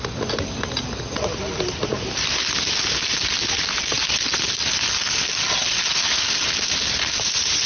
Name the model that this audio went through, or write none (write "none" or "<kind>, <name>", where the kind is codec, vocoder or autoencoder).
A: none